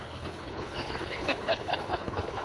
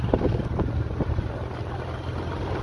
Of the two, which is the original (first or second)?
second